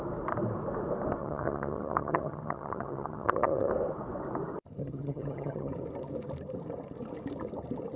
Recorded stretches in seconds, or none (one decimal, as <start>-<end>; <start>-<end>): 0.0-1.2; 3.7-4.8; 5.7-8.0